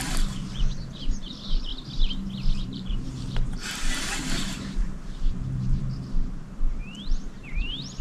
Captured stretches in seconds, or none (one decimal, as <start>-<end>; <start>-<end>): 1.7-2.6